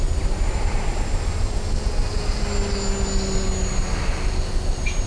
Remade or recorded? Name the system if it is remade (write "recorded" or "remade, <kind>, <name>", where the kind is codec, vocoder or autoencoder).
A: recorded